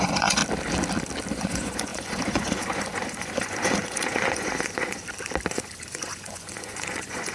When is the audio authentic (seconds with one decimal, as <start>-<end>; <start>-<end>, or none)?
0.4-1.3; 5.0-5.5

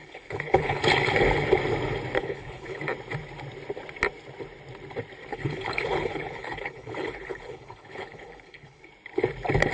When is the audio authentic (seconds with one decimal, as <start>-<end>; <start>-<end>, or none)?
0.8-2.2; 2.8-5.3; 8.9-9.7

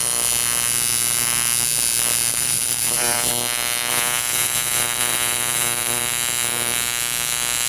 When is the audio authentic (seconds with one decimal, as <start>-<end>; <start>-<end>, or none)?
0.0-2.3; 3.3-3.9; 6.0-7.7